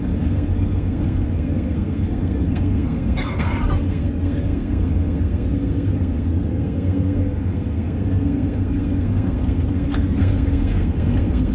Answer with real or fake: fake